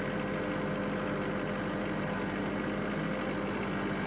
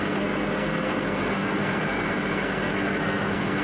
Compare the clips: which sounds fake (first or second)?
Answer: second